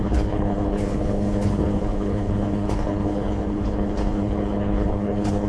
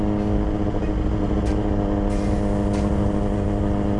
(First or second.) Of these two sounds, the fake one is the first